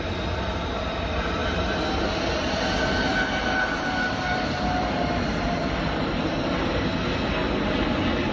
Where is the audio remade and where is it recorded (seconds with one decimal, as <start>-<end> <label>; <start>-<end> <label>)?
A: 0.0-3.1 recorded; 3.1-6.8 remade; 6.8-8.3 recorded